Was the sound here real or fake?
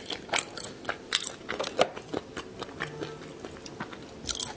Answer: real